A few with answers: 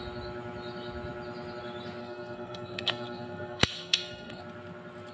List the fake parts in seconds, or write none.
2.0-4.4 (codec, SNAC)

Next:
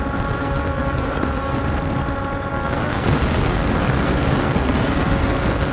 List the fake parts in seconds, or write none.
0.4-1.6 (codec, SNAC); 2.5-5.7